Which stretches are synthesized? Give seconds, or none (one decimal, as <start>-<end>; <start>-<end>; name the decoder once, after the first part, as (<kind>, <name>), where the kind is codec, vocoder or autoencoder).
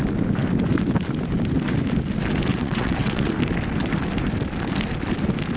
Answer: 2.5-3.3 (vocoder, WaveNeXt)